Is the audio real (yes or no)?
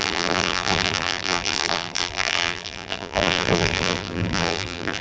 no